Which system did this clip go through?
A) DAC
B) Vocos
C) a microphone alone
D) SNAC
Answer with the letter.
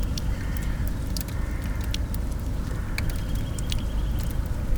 C